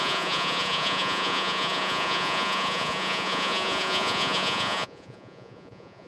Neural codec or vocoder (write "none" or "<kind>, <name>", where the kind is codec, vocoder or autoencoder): vocoder, Vocos